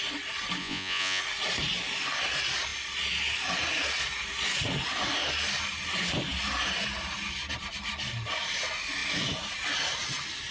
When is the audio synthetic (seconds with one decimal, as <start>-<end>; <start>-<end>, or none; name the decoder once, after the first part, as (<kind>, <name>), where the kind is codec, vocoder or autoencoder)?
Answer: 0.6-1.2 (vocoder, Vocos)